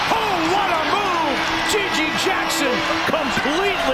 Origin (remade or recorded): recorded